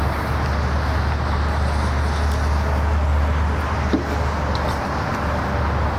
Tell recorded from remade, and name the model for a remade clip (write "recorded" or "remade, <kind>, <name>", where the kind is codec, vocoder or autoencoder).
recorded